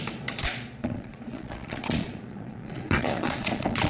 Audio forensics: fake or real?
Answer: fake